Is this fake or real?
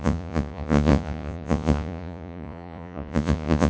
fake